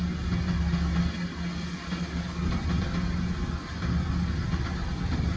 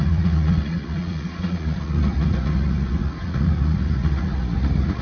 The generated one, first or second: second